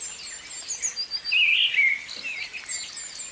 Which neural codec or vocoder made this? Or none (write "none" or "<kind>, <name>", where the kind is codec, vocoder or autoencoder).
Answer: none